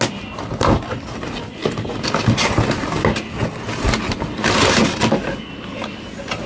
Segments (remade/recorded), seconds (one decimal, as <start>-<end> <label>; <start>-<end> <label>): 0.0-6.5 recorded